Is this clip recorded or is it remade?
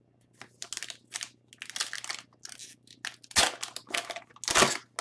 recorded